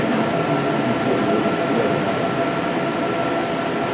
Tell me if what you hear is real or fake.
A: real